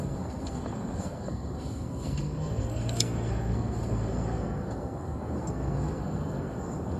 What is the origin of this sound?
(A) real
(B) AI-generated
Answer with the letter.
B